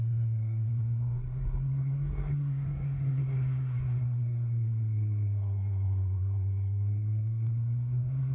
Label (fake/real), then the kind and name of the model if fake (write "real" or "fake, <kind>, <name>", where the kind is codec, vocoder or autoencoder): fake, codec, SNAC